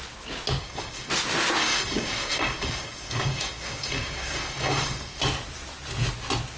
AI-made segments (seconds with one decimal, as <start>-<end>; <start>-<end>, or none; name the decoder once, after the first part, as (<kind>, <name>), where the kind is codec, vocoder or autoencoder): 0.6-1.1 (codec, DAC); 1.6-5.2